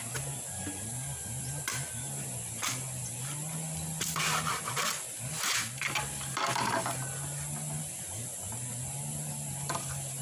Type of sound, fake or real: fake